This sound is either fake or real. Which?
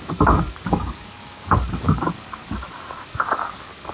fake